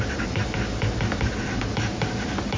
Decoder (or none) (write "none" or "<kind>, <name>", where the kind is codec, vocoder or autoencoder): none